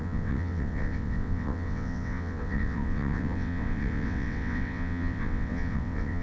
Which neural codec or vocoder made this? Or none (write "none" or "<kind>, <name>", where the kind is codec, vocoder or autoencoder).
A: vocoder, WaveNeXt